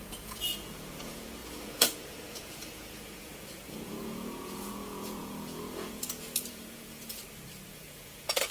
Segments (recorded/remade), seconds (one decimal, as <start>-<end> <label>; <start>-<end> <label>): 0.0-7.2 remade; 7.2-7.7 recorded; 7.7-8.5 remade